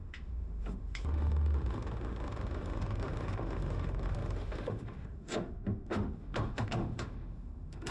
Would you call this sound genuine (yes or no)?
no